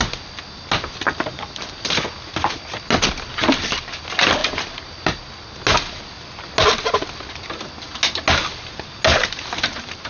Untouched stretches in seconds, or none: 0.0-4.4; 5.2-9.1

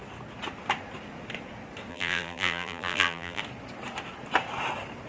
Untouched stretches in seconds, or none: 0.0-1.9; 3.4-5.1

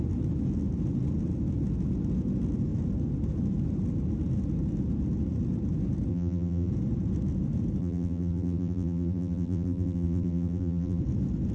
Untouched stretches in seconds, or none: 0.0-6.1; 6.7-7.8; 11.0-11.5

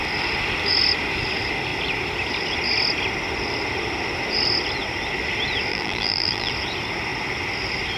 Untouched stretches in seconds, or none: 0.0-5.7; 6.5-8.0